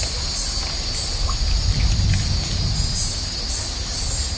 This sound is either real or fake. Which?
real